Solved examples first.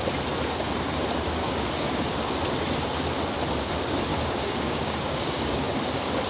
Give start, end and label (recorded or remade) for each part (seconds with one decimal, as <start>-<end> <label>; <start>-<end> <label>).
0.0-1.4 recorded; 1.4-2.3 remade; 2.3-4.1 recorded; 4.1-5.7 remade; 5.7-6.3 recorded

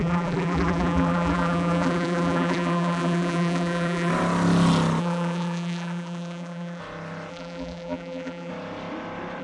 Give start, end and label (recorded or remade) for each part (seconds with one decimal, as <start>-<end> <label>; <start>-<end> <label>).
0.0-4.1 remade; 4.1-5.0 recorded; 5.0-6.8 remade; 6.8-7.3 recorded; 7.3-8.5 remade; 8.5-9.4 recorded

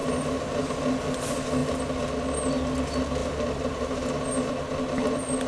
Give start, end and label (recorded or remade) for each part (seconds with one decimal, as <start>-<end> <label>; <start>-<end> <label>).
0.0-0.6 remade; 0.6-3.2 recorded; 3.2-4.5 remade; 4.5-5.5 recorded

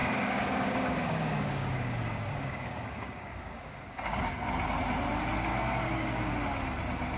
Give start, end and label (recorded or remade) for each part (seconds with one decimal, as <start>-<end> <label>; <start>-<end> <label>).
0.0-4.3 remade; 4.3-5.5 recorded; 5.5-6.3 remade; 6.3-7.2 recorded